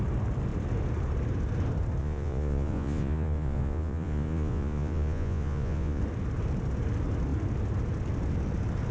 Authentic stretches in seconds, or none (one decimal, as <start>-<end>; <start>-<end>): 0.0-2.0; 6.0-8.9